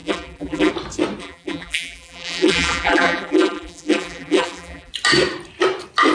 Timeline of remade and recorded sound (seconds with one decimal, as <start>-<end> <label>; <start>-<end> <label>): 0.0-0.7 remade; 0.7-1.2 recorded; 1.2-4.9 remade; 4.9-6.1 recorded